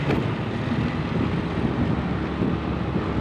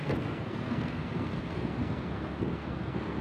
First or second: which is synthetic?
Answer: second